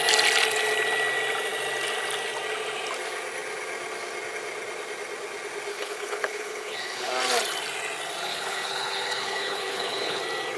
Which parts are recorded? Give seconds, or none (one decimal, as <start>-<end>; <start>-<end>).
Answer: 0.0-5.7; 7.1-8.3; 10.2-10.6